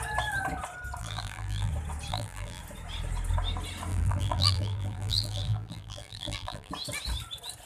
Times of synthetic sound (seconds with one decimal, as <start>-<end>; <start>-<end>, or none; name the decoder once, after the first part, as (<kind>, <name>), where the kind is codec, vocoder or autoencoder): 1.0-1.7 (vocoder, BigVGAN v2); 2.1-2.6; 3.9-6.7